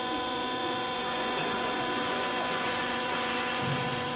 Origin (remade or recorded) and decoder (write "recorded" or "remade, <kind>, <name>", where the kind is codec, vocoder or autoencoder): remade, vocoder, Vocos